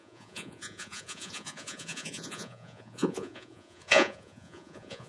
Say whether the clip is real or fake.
fake